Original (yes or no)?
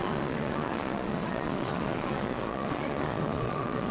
no